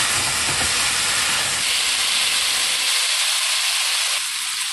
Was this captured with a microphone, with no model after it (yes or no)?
yes